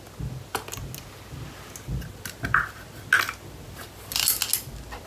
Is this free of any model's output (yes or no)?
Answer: yes